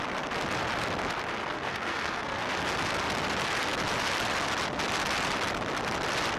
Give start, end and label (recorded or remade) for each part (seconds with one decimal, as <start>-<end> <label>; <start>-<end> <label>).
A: 0.0-1.4 recorded; 1.4-2.4 remade; 2.4-6.4 recorded